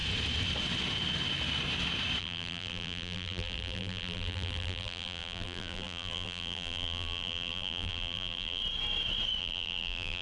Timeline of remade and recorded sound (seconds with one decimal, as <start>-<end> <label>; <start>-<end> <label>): 0.0-2.2 recorded; 2.2-8.6 remade; 8.6-9.4 recorded; 9.4-10.2 remade